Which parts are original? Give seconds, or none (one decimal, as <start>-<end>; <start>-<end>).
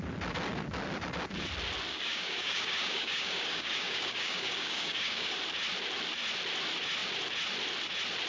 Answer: 0.0-1.9; 5.4-8.3